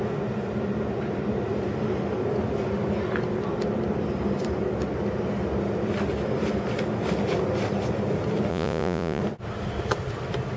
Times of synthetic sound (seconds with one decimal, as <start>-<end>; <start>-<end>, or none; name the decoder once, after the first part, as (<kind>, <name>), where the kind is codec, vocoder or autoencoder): 8.5-9.2 (vocoder, Vocos)